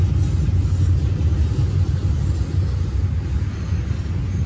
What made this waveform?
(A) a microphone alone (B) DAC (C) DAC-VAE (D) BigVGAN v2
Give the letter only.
A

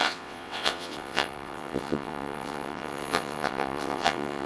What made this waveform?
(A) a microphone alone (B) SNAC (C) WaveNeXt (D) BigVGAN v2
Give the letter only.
C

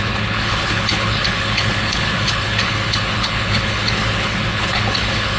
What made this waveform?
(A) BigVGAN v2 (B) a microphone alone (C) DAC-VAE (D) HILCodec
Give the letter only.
D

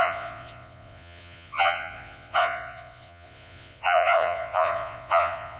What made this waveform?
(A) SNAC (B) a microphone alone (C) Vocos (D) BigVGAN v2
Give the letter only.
C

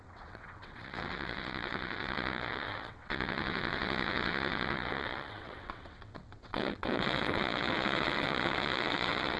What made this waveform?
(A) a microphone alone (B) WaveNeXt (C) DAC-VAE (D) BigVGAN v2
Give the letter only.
B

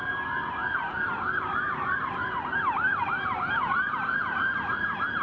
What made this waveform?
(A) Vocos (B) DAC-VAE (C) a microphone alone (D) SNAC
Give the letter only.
C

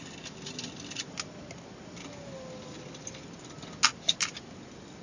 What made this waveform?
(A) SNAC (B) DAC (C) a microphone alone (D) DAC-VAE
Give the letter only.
C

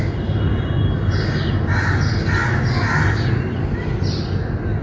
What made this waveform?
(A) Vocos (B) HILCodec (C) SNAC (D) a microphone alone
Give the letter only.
D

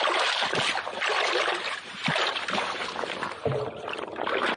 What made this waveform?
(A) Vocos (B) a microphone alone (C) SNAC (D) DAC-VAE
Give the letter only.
B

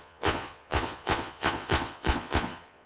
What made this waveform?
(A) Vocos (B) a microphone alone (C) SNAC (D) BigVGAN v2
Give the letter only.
A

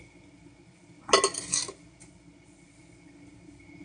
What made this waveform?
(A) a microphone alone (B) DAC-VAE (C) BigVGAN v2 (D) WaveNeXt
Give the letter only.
A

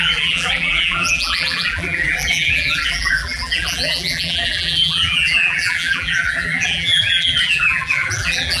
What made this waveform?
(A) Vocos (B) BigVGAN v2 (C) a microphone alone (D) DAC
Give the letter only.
B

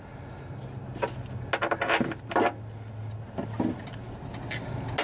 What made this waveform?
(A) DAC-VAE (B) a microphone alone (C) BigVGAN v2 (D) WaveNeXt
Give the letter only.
B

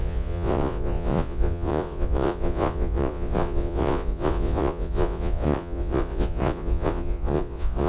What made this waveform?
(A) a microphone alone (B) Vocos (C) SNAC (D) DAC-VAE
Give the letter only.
B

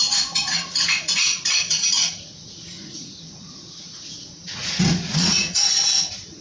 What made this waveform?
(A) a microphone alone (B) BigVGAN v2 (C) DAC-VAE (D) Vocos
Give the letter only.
D